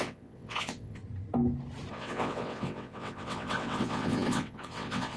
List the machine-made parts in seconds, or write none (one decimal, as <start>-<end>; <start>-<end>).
0.0-1.0; 1.9-5.2

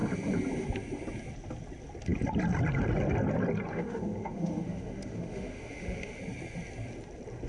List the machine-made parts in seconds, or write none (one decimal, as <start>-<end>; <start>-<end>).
3.7-6.2

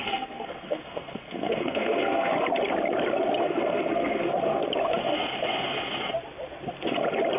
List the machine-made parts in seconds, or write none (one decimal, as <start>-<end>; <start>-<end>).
0.0-2.3; 3.4-4.6

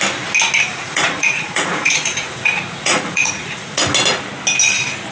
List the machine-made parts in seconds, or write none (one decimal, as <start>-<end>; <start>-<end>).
0.7-3.8